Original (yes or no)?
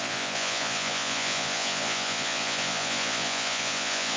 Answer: no